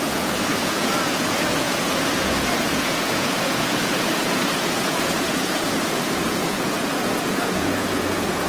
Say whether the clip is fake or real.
fake